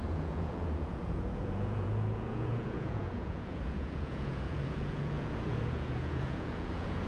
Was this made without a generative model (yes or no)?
no